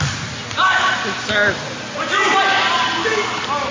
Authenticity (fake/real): real